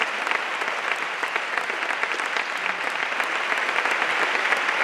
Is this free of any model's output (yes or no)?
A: yes